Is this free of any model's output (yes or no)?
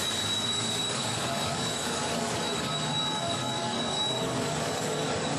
no